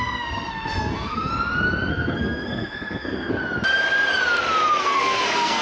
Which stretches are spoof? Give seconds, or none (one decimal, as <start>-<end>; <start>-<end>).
0.0-1.3; 1.9-3.4; 4.8-5.6